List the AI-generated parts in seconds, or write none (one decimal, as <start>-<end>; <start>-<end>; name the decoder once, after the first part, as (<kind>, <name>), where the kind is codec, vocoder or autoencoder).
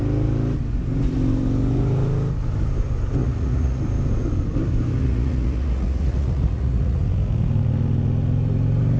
3.2-3.8 (vocoder, Vocos); 5.0-7.0